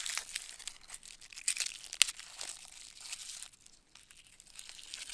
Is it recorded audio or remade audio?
recorded